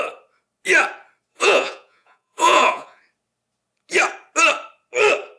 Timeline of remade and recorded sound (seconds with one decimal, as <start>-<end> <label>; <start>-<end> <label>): 0.0-1.3 recorded; 1.3-3.0 remade; 3.0-5.4 recorded

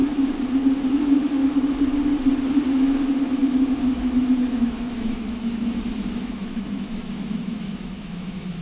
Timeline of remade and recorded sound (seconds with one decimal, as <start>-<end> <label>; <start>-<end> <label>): 0.0-0.9 recorded; 0.9-1.4 remade; 1.4-2.6 recorded; 2.6-8.6 remade

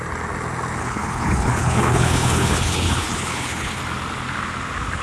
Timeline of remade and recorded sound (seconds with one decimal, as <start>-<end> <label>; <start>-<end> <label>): 0.0-0.8 recorded; 0.8-3.8 remade; 3.8-5.0 recorded

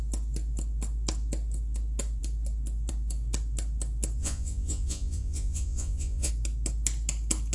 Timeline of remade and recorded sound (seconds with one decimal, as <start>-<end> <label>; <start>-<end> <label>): 0.0-4.2 recorded; 4.2-6.3 remade; 6.3-7.5 recorded

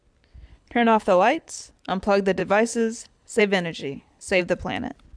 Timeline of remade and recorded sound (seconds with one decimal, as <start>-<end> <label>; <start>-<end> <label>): 0.0-0.5 recorded; 0.5-1.7 remade; 1.7-2.4 recorded; 2.4-3.4 remade; 3.4-3.8 recorded; 3.8-4.4 remade; 4.4-5.2 recorded